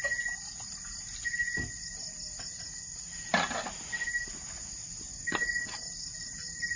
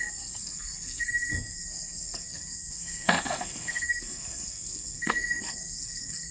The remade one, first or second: second